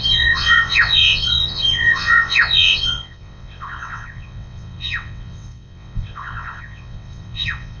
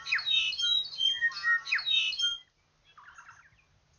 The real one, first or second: second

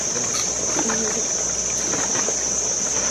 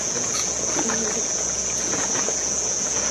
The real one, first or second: first